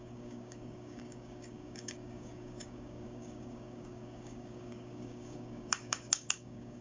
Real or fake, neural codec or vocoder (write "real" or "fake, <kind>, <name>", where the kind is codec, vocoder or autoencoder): fake, codec, DAC